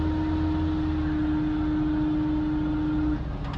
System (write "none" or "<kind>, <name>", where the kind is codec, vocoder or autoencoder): none